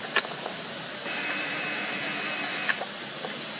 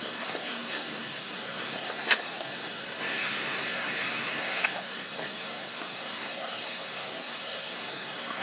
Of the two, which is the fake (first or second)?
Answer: second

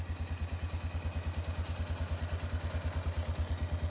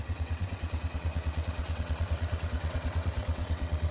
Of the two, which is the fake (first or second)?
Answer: second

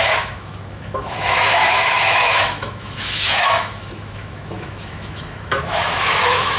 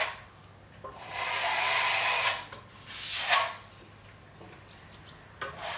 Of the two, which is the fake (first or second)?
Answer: first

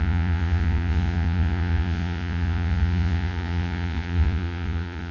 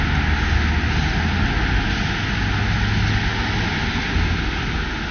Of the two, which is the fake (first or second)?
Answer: first